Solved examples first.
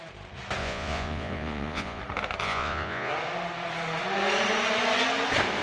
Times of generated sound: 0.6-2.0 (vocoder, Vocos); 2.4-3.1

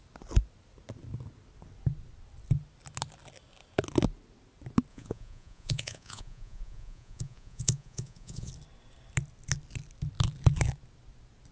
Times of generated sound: 4.9-8.5 (vocoder, Vocos)

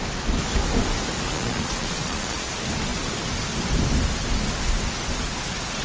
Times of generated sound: 1.3-2.5 (vocoder, Vocos)

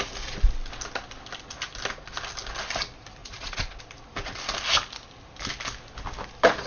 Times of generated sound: 3.2-3.8 (vocoder, Vocos)

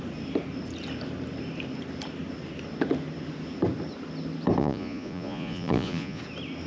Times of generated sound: 4.6-6.2 (vocoder, Vocos)

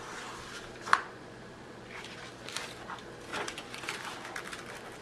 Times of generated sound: 0.9-2.0 (vocoder, Vocos); 3.3-3.9